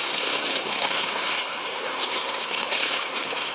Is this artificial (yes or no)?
yes